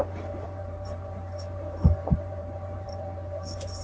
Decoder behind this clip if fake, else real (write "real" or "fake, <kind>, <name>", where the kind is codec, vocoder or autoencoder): fake, vocoder, BigVGAN v2